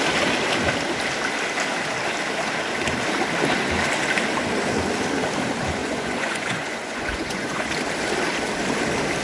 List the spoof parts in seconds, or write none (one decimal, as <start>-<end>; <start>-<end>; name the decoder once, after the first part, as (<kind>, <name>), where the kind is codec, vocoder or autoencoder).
5.8-7.7 (vocoder, Vocos)

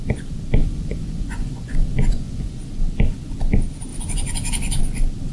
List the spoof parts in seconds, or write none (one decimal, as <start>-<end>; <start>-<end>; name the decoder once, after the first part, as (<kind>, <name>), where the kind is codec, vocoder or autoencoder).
0.6-2.6 (vocoder, Vocos)

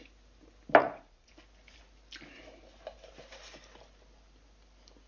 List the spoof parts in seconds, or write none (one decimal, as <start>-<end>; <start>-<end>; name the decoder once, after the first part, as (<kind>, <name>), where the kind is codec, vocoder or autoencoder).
0.8-1.3 (vocoder, Vocos)

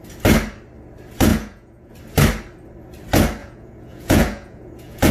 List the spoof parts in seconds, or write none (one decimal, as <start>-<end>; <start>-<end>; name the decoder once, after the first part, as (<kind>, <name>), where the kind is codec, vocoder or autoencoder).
1.3-1.9 (vocoder, Vocos); 3.4-5.1

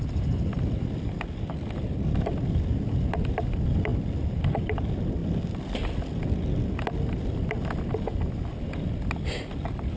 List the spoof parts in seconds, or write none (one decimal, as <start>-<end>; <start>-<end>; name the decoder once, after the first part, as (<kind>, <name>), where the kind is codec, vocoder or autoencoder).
none

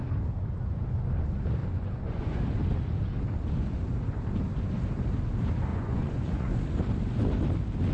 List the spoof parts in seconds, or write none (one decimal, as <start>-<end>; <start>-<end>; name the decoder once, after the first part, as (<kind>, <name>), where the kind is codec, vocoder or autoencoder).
1.6-2.4 (vocoder, Vocos); 5.7-6.6

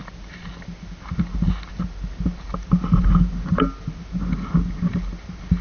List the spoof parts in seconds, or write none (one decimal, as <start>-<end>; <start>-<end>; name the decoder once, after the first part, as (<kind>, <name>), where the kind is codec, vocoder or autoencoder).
none